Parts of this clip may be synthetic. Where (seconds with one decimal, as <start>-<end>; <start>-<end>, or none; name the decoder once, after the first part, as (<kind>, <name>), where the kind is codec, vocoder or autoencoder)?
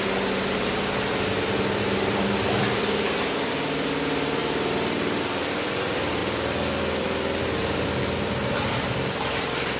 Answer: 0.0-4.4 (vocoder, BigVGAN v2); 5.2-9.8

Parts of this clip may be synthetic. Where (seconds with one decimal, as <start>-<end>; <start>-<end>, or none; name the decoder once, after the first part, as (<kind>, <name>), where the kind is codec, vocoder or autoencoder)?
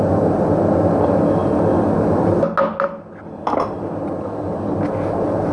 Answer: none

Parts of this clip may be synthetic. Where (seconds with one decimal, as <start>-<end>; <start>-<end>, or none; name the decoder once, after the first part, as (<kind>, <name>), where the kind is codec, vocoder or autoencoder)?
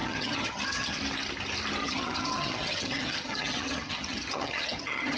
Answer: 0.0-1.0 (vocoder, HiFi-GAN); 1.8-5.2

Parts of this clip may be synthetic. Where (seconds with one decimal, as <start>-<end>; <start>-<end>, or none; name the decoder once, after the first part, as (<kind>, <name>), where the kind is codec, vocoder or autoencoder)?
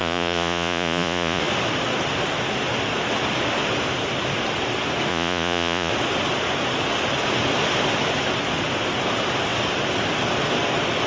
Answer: 0.0-1.4 (vocoder, Vocos); 5.1-5.9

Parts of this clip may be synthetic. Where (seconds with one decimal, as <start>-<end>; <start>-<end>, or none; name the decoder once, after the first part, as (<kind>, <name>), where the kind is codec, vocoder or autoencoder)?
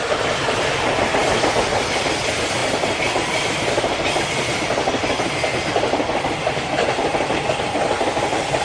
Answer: none